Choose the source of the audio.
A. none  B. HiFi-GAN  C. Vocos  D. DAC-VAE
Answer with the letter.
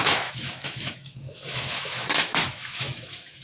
D